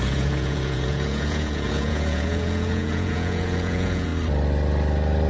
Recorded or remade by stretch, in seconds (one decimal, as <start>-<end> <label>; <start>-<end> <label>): 0.0-4.1 remade; 4.1-5.3 recorded